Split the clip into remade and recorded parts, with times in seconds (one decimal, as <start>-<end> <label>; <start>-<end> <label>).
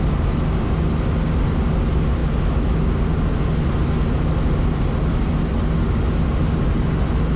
0.0-7.4 recorded